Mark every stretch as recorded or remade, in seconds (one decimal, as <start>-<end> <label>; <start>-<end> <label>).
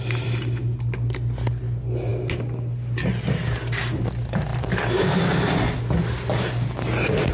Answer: 0.0-4.5 recorded; 4.5-5.2 remade; 5.2-7.3 recorded